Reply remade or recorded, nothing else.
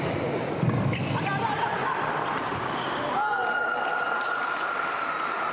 recorded